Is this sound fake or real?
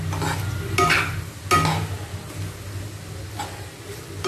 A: real